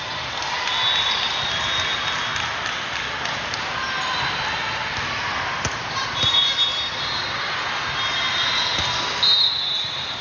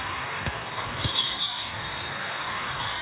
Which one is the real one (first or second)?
first